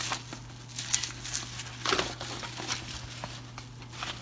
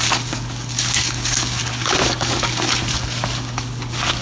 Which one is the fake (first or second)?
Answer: second